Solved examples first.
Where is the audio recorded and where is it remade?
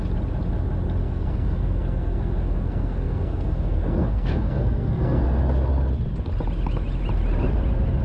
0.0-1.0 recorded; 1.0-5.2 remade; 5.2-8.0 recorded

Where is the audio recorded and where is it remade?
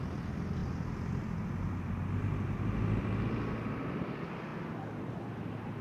0.0-5.8 recorded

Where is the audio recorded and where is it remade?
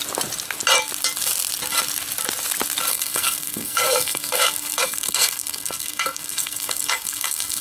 0.0-2.9 recorded; 2.9-7.6 remade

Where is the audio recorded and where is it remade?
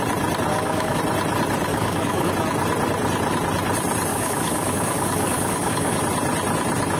0.0-0.5 recorded; 0.5-1.0 remade; 1.0-1.7 recorded; 1.7-2.3 remade; 2.3-4.1 recorded; 4.1-6.0 remade; 6.0-7.0 recorded